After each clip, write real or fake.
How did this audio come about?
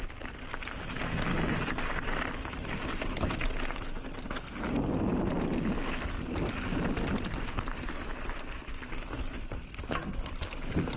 real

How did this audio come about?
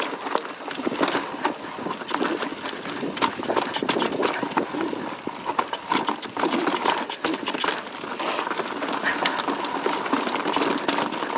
real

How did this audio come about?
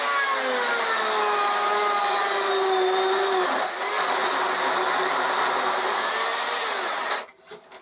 real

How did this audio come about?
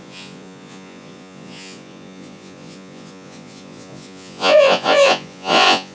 fake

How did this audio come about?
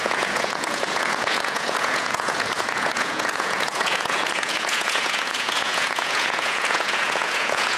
fake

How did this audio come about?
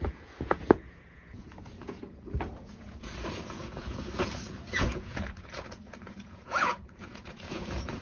fake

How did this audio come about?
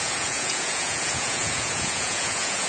fake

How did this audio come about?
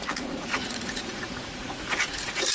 fake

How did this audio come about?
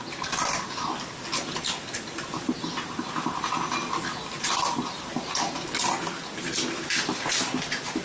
real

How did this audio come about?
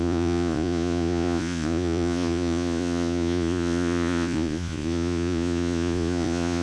fake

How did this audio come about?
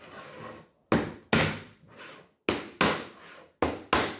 real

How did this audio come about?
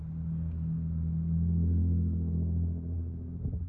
real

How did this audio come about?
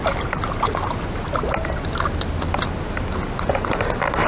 real